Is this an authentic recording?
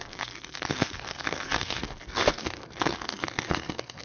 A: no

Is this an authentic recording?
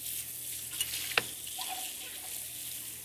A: yes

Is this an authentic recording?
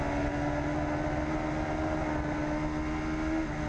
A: yes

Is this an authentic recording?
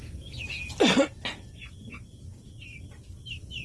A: yes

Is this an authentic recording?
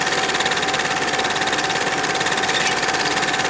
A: yes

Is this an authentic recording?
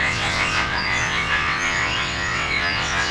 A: no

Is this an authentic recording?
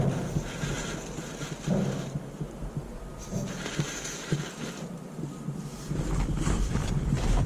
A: yes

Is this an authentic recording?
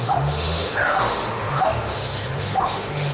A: no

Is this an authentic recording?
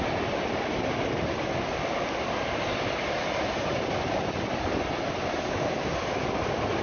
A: yes